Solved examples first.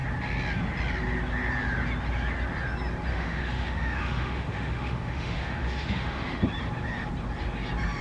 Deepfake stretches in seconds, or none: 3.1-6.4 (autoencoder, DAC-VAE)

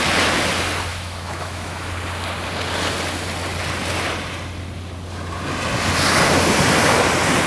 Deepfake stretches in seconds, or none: 0.9-1.9 (autoencoder, DAC-VAE)